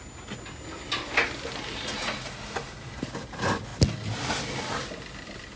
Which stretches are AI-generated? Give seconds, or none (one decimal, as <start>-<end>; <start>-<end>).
none